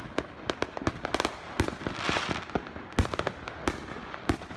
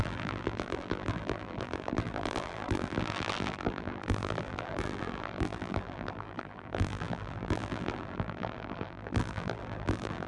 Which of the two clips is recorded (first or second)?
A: first